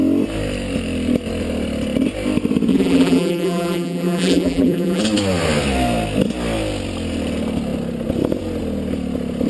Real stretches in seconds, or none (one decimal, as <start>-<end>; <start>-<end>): 0.0-2.7; 5.0-9.5